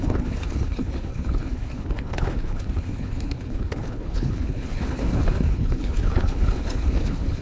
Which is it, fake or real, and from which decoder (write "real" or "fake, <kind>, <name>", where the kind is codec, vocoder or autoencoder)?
fake, codec, HILCodec